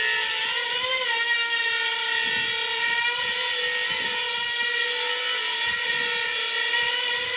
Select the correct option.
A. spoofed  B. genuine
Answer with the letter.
B